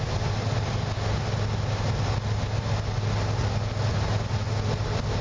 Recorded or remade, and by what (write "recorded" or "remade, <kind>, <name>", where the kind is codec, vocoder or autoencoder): recorded